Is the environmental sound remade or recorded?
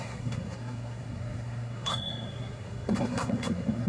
remade